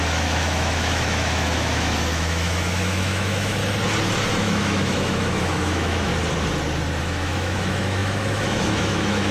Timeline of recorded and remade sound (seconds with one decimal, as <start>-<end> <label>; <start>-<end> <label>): 0.0-3.6 remade; 3.6-4.3 recorded; 4.3-6.1 remade; 6.1-7.0 recorded; 7.0-9.3 remade